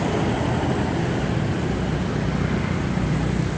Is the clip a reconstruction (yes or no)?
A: no